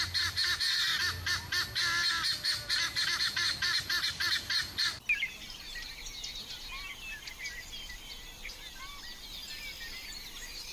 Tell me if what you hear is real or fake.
real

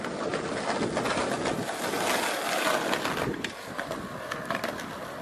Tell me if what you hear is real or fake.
real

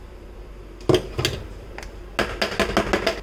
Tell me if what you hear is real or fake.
real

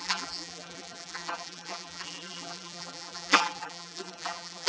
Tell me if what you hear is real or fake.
fake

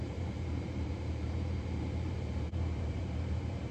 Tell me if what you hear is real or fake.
fake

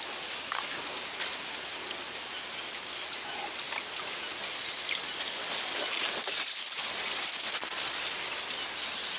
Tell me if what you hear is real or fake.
real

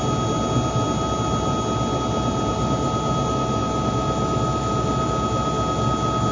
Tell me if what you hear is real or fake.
real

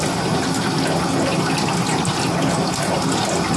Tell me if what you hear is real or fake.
real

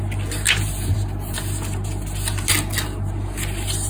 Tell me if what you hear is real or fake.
real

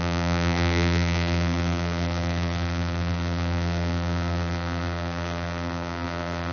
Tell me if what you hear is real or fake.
fake